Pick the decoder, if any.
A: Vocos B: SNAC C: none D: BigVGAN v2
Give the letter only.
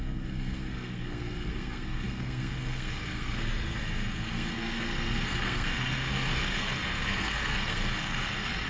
B